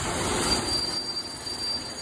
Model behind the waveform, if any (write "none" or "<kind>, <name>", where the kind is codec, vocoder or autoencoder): none